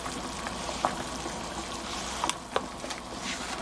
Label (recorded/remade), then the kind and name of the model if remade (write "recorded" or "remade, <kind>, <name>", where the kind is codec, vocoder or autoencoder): recorded